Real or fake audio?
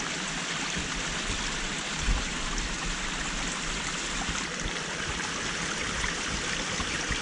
real